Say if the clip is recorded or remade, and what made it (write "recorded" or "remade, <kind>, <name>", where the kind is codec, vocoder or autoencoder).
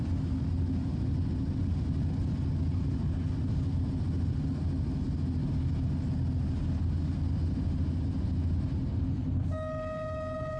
recorded